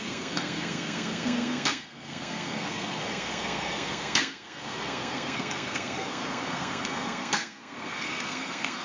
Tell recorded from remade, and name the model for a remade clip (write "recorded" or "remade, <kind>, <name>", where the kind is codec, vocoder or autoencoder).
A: remade, codec, SNAC